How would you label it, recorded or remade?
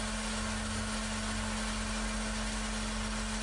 recorded